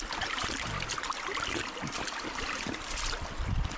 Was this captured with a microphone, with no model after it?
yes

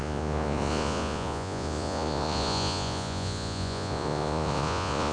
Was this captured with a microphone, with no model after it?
no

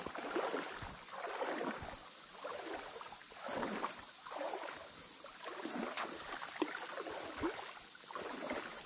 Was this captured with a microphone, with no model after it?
yes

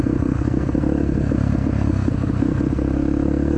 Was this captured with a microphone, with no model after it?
no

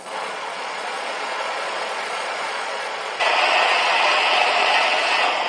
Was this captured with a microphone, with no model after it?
no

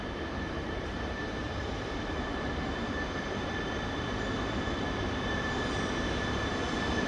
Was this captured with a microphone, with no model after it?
no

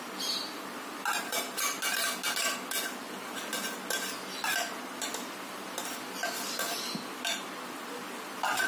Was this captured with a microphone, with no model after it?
yes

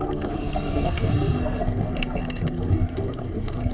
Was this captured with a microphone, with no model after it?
no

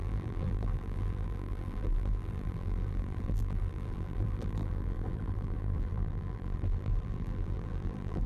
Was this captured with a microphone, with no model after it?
no